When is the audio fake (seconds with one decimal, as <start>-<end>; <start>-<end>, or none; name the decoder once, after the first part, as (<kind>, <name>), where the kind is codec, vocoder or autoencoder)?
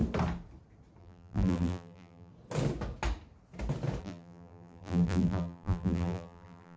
1.0-2.3 (vocoder, BigVGAN v2); 4.0-6.8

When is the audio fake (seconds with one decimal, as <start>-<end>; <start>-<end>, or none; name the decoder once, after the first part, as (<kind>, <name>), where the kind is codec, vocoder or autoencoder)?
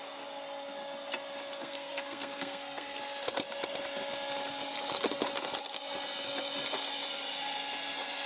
1.6-3.0 (codec, SNAC)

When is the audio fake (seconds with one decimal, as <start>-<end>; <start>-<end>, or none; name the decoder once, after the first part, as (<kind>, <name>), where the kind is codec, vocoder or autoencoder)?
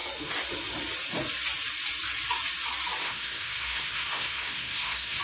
3.0-5.2 (codec, SNAC)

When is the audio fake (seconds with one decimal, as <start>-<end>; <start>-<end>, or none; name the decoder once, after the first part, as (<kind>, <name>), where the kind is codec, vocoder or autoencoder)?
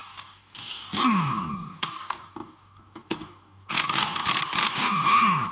0.0-4.2 (codec, DAC); 4.7-5.5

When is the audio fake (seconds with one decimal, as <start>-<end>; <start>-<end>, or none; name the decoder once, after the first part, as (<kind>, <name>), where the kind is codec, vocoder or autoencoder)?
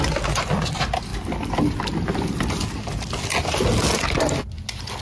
none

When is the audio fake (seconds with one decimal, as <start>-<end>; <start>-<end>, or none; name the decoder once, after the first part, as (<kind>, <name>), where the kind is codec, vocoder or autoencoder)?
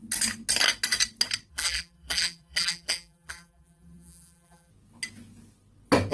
1.5-4.7 (vocoder, BigVGAN v2)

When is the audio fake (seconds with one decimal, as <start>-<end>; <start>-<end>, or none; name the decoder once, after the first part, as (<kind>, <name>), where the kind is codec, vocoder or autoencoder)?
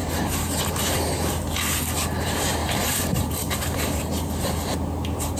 0.0-0.8 (vocoder, BigVGAN v2); 2.6-4.0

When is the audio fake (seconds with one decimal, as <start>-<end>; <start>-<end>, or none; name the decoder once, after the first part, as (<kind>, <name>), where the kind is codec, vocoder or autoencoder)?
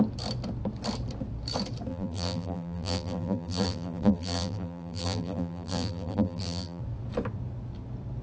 1.9-6.8 (vocoder, BigVGAN v2)